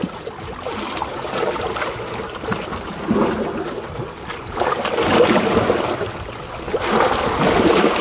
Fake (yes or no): no